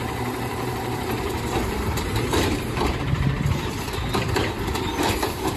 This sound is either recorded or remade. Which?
remade